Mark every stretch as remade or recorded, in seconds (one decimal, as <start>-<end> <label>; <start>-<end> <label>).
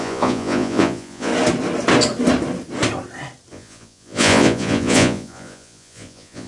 0.0-1.3 remade; 1.3-3.5 recorded; 3.5-6.5 remade